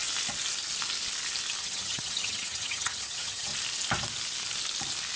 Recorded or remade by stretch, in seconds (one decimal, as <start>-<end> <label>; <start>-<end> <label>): 0.0-1.6 recorded; 1.6-3.5 remade; 3.5-5.2 recorded